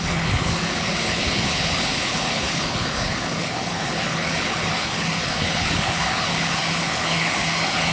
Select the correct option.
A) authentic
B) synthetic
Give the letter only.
B